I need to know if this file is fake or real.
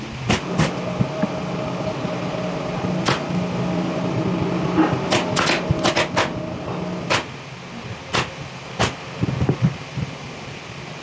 real